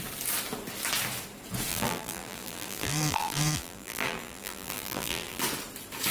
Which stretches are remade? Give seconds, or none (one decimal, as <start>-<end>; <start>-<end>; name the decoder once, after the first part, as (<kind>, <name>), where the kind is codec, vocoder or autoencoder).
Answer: 1.7-5.4 (vocoder, BigVGAN v2)